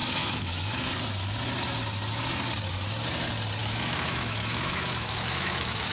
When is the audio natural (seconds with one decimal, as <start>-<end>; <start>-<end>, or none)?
0.9-3.6